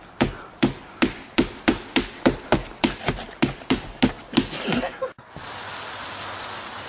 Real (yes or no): yes